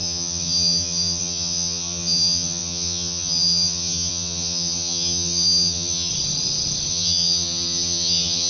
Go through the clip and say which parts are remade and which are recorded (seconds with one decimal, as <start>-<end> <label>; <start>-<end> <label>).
0.0-6.1 remade; 6.1-6.9 recorded; 6.9-8.5 remade